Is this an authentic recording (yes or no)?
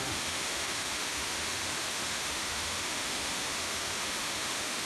no